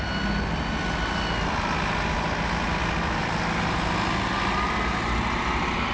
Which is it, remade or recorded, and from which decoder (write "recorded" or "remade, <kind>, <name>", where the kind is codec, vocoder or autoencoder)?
recorded